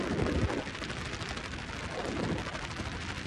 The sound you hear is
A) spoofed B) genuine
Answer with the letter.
B